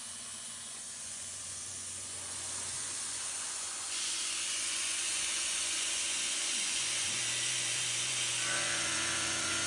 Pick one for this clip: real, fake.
fake